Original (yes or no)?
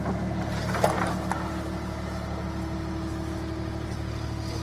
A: yes